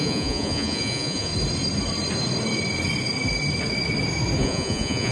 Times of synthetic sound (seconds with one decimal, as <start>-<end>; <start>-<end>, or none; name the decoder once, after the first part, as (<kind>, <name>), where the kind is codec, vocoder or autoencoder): 0.0-1.3 (vocoder, Vocos); 4.4-5.1